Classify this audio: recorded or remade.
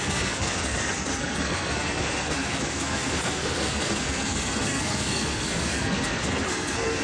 remade